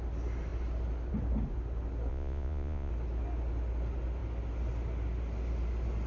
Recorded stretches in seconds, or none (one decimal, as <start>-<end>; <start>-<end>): 0.0-2.1; 2.9-6.1